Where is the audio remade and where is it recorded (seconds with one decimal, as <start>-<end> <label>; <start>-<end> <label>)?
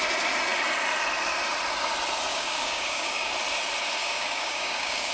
0.0-2.3 recorded; 2.3-3.3 remade; 3.3-4.0 recorded; 4.0-5.1 remade